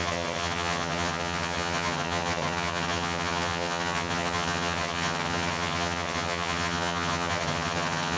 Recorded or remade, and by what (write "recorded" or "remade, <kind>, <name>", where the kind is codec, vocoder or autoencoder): remade, vocoder, HiFi-GAN